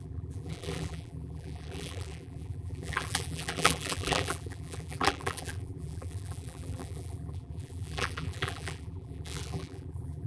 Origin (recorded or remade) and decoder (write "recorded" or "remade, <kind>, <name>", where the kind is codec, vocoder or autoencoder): remade, vocoder, BigVGAN v2